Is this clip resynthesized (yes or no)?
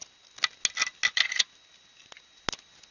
no